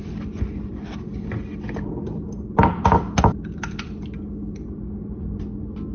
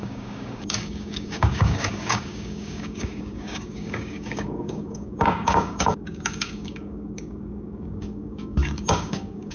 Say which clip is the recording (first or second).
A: first